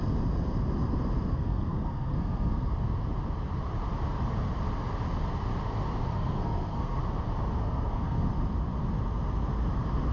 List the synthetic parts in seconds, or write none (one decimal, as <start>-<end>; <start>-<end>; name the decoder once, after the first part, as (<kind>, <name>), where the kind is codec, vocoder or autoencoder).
1.3-2.7 (codec, SNAC); 6.1-7.0; 7.6-8.3